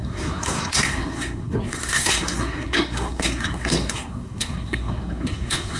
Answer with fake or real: fake